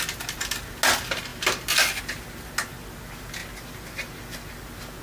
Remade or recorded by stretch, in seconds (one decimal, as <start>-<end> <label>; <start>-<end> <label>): 0.0-5.0 recorded